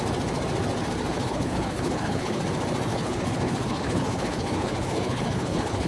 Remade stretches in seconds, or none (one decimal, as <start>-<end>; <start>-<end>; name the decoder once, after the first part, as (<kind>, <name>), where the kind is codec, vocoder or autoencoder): 1.1-2.4 (codec, HILCodec); 2.9-5.9